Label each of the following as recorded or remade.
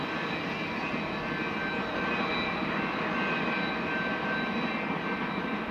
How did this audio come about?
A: recorded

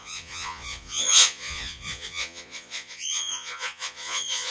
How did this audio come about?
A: remade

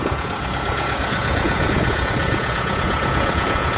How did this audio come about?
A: remade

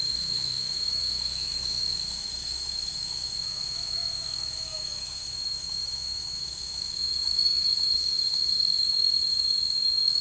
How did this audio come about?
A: remade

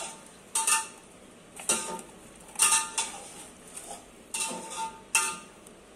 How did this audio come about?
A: recorded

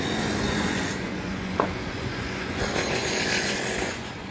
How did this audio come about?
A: remade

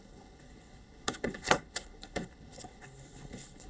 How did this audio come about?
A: remade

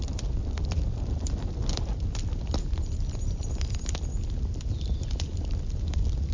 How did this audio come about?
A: recorded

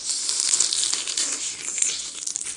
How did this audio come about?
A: recorded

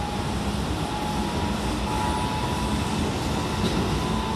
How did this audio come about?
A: recorded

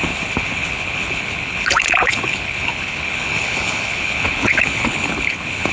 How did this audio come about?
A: remade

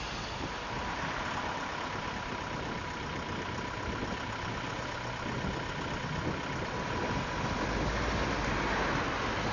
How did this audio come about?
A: recorded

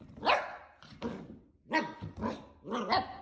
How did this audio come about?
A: recorded